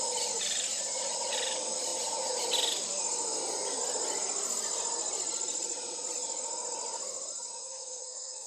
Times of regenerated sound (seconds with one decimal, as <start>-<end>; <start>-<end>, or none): 7.6-8.5